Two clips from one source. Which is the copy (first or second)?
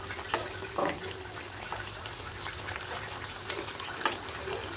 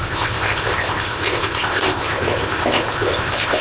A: second